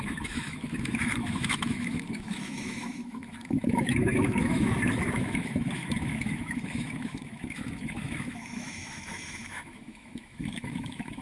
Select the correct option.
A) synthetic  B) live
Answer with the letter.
A